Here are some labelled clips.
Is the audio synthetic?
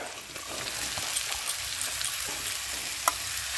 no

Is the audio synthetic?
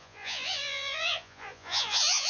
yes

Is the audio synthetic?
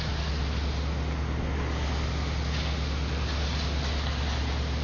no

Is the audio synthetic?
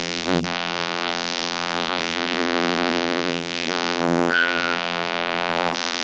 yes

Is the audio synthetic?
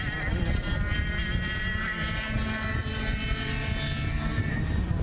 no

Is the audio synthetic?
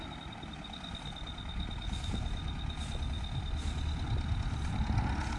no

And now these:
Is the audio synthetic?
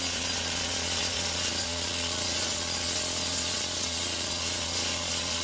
yes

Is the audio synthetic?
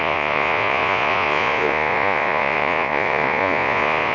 yes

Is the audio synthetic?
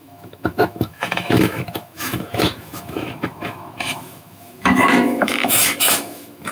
yes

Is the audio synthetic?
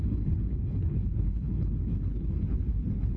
yes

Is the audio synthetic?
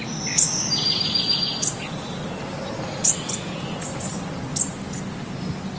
no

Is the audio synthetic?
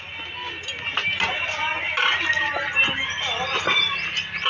no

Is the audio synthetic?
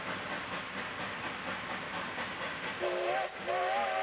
no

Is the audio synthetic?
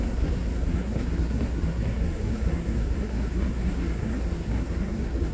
yes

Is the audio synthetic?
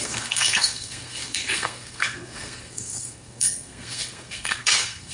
yes